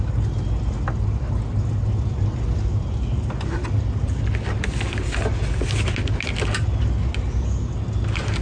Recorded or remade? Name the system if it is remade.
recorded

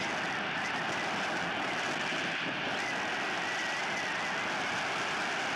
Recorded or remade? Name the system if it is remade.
recorded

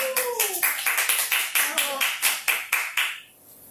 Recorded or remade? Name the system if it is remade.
remade, vocoder, BigVGAN v2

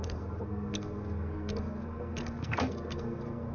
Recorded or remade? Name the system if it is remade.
remade, codec, SNAC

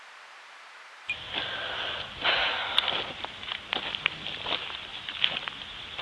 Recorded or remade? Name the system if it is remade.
recorded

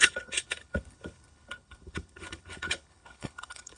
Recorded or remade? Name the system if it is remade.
remade, codec, HILCodec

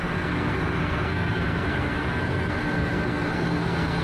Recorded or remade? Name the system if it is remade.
remade, codec, SNAC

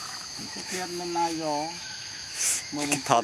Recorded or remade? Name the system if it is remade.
remade, autoencoder, DAC-VAE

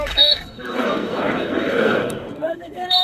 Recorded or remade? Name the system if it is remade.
remade, codec, SNAC